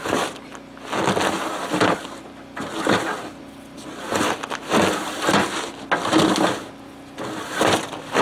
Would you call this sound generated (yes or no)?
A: no